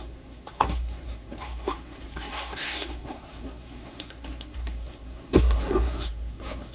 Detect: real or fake fake